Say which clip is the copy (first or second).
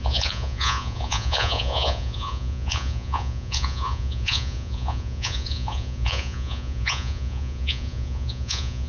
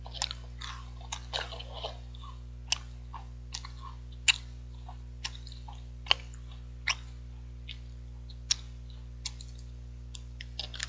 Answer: first